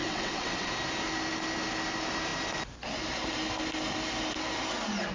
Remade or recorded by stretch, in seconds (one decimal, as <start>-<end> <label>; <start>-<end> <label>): 0.0-0.7 remade; 0.7-5.1 recorded